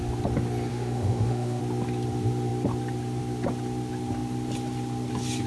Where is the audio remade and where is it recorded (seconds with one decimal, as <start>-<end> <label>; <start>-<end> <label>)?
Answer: 0.0-0.7 recorded; 0.7-1.6 remade; 1.6-5.5 recorded